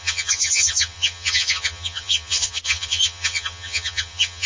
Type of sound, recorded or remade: remade